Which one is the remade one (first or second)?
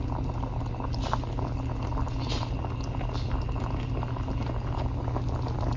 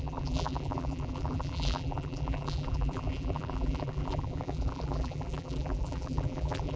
second